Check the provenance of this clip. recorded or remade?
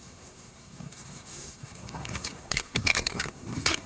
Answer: remade